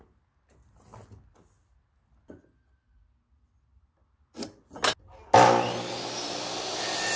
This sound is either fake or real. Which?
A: real